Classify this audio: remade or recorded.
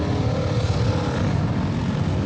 recorded